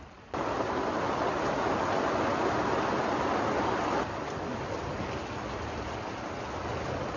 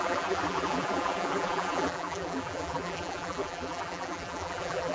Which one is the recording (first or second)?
first